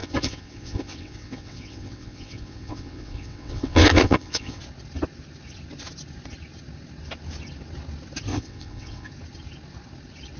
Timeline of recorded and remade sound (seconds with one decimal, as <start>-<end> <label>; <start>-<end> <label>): 0.0-4.6 remade; 4.6-8.3 recorded; 8.3-9.1 remade; 9.1-10.4 recorded